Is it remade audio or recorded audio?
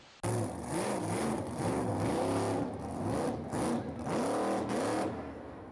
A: recorded